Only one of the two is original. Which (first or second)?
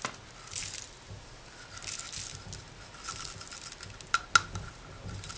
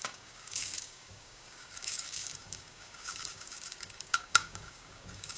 first